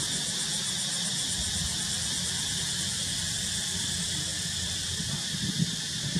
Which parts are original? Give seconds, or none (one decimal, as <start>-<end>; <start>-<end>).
0.0-6.2